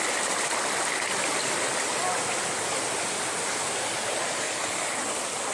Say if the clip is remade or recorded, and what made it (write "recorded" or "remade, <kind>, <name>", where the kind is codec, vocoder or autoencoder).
recorded